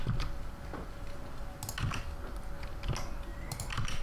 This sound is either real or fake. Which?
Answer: real